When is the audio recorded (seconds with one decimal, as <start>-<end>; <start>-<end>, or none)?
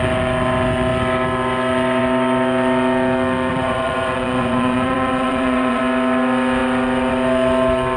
0.0-3.5; 5.8-8.0